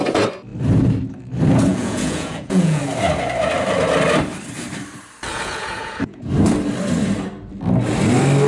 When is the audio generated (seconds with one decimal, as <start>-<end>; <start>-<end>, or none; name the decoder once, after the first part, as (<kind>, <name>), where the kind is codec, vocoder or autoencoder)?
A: 1.7-2.8 (vocoder, Vocos); 5.3-6.3